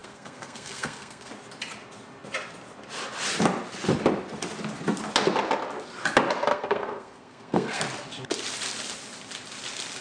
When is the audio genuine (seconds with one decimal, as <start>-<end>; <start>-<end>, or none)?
1.3-6.5; 7.8-10.0